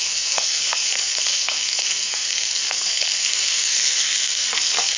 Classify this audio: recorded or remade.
remade